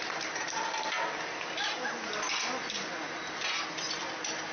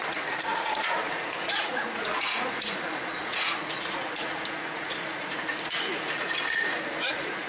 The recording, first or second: first